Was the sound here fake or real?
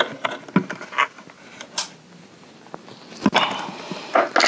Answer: real